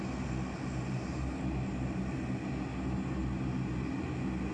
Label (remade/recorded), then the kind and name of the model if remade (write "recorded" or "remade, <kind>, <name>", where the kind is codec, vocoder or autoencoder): recorded